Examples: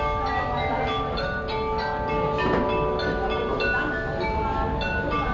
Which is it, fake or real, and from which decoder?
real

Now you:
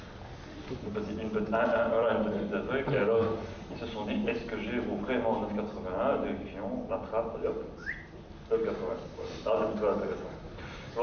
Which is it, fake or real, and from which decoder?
real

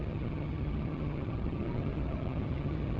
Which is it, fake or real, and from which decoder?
fake, vocoder, HiFi-GAN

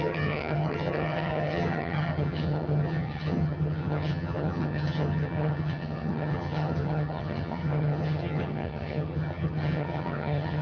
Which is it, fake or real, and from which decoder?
fake, vocoder, HiFi-GAN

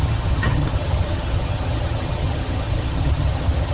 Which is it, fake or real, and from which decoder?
fake, vocoder, HiFi-GAN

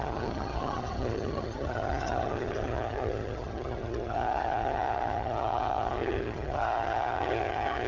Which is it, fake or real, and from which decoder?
fake, vocoder, HiFi-GAN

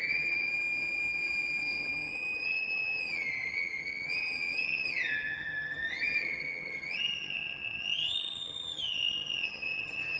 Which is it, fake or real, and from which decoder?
fake, vocoder, HiFi-GAN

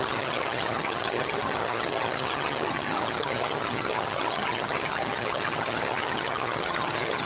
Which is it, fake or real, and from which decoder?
fake, vocoder, HiFi-GAN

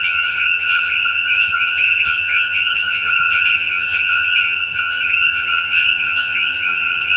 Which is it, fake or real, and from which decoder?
fake, vocoder, HiFi-GAN